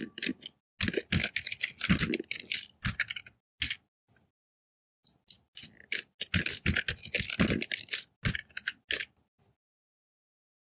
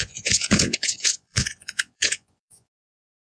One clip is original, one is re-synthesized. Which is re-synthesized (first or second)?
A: second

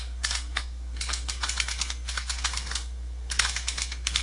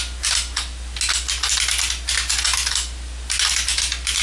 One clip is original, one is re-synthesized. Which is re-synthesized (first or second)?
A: first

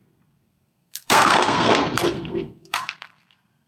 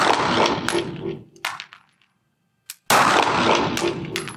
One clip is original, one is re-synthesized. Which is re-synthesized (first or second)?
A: first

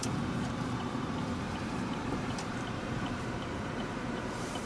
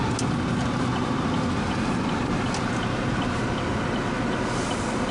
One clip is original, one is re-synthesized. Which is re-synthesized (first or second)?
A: first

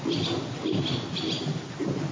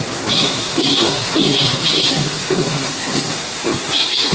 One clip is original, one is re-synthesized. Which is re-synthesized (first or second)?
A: second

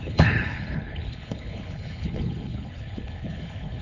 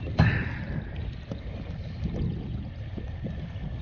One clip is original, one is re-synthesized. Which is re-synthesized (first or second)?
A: first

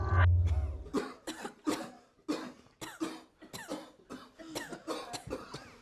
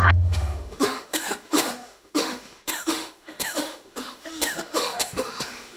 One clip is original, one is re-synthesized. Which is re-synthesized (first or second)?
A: second